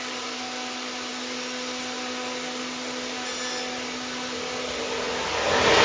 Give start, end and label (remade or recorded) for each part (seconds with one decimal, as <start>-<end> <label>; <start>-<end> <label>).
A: 0.0-5.8 recorded